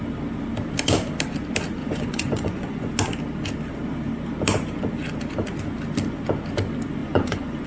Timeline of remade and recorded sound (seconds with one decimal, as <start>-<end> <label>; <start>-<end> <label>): 0.0-1.8 recorded; 1.8-2.9 remade; 2.9-7.0 recorded; 7.0-7.7 remade